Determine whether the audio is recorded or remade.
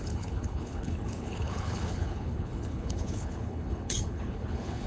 remade